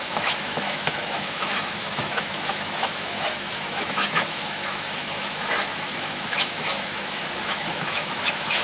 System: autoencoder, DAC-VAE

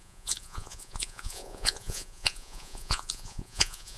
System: vocoder, Vocos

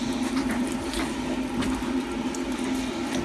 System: vocoder, BigVGAN v2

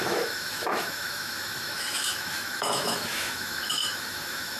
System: autoencoder, DAC-VAE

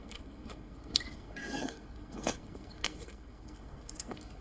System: codec, SNAC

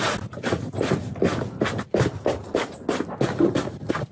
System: none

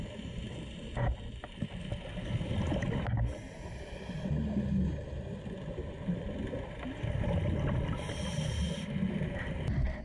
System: none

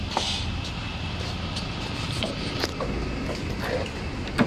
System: none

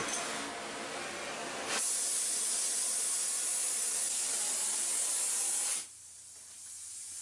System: none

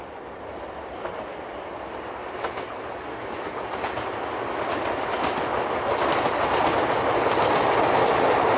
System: none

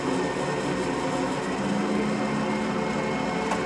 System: none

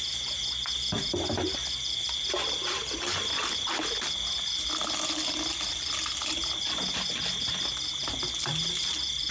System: none